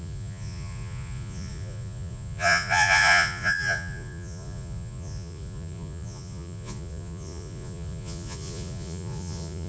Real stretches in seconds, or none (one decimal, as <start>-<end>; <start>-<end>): none